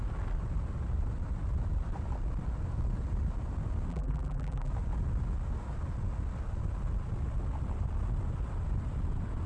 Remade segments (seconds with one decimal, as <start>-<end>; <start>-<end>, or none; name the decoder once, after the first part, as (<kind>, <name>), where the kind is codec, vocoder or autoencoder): 3.9-4.7 (vocoder, BigVGAN v2)